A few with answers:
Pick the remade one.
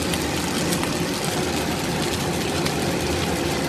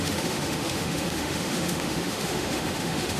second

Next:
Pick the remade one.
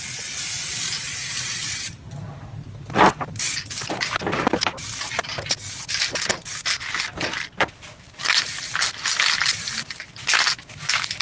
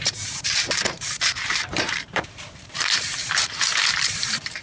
second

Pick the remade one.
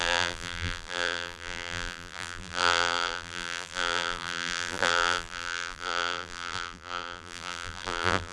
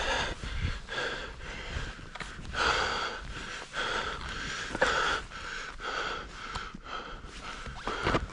first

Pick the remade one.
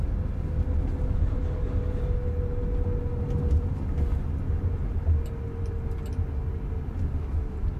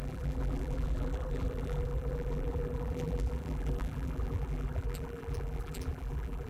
second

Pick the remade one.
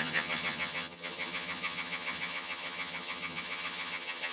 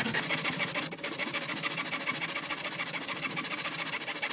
first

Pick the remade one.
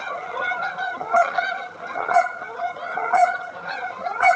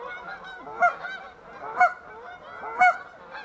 first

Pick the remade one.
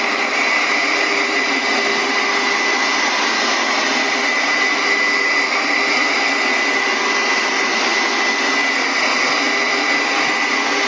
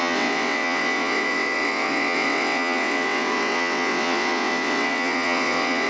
second